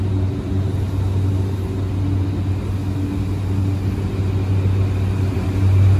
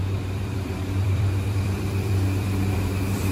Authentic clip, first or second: first